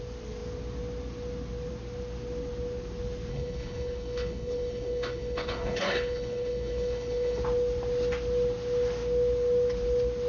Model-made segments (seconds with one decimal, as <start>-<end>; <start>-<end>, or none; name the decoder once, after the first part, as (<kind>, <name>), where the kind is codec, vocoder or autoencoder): 3.3-7.4 (codec, HILCodec)